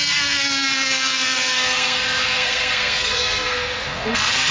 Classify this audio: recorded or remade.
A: remade